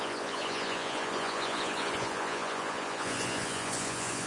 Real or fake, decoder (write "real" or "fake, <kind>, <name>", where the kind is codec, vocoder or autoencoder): fake, vocoder, Vocos